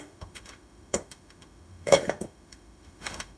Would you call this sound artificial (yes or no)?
yes